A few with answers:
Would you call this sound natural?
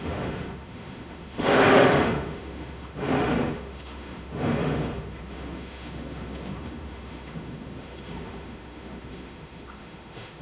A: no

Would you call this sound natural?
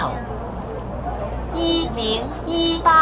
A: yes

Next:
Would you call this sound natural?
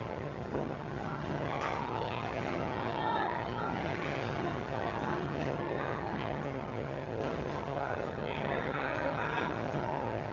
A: no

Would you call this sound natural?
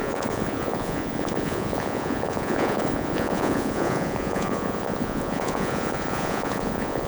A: no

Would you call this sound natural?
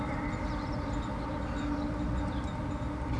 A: yes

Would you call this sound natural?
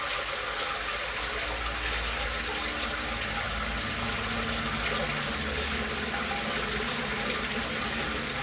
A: yes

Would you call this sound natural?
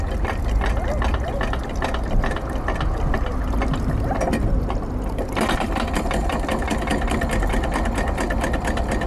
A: yes